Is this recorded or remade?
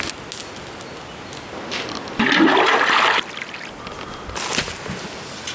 recorded